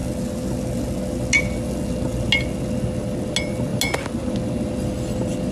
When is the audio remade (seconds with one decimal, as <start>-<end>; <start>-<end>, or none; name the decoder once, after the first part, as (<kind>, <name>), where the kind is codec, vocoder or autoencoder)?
none